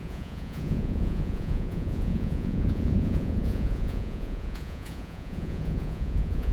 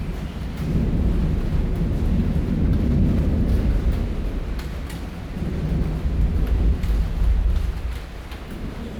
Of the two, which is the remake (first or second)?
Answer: first